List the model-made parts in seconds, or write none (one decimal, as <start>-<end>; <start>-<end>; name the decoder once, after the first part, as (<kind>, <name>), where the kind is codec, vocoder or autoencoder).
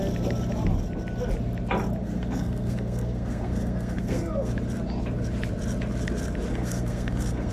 2.0-4.5 (codec, SNAC); 6.5-7.5